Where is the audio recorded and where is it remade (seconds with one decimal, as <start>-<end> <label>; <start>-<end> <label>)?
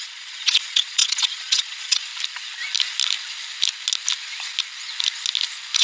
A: 0.0-2.1 remade; 2.1-5.8 recorded